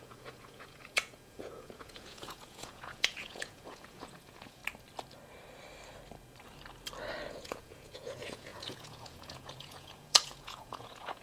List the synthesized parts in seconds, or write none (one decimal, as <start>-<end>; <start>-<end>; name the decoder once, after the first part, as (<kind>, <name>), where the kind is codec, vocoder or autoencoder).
0.0-4.6 (vocoder, Vocos); 7.3-11.2